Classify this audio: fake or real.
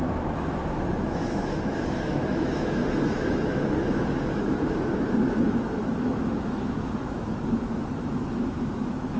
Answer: fake